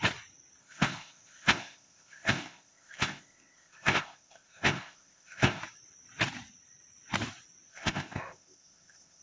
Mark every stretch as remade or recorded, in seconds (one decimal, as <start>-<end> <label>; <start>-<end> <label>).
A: 0.0-0.6 recorded; 0.6-5.6 remade; 5.6-7.7 recorded; 7.7-9.2 remade